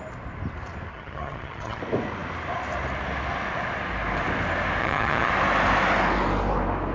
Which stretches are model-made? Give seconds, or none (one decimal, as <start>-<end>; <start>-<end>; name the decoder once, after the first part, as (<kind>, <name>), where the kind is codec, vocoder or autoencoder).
0.9-1.8 (vocoder, HiFi-GAN); 4.8-5.3